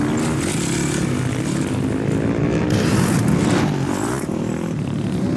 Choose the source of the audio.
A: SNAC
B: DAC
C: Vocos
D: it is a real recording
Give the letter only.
D